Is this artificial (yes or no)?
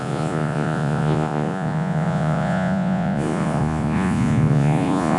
yes